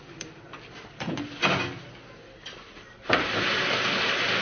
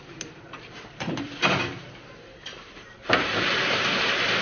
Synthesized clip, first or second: second